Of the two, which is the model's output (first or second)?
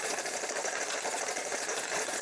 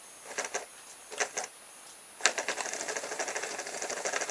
first